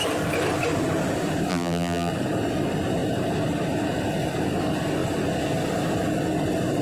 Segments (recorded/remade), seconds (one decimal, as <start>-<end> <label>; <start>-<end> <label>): 0.0-1.5 recorded; 1.5-2.1 remade; 2.1-6.8 recorded